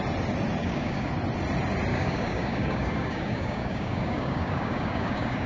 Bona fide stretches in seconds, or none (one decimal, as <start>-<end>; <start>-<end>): 0.0-0.6; 1.1-1.9